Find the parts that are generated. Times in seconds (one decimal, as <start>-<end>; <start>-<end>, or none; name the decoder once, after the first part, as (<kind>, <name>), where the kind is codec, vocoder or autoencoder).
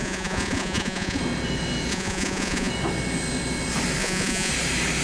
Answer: 0.0-1.2 (vocoder, Vocos); 1.9-2.7; 4.0-4.5